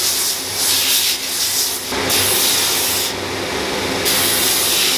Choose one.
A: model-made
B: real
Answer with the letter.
B